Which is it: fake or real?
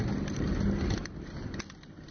real